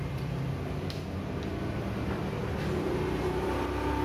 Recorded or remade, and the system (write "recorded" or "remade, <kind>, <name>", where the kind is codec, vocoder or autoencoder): recorded